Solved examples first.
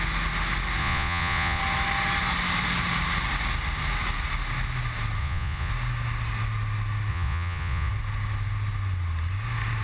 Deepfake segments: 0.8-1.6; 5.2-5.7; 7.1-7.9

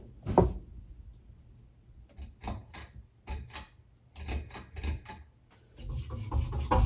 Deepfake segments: none

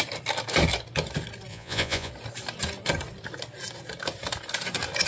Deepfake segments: 1.5-2.1

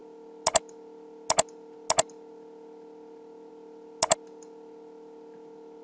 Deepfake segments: none

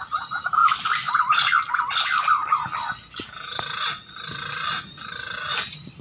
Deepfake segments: none

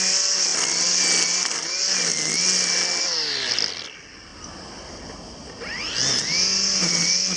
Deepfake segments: none

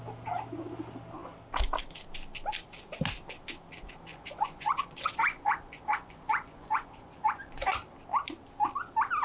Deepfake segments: 4.1-7.8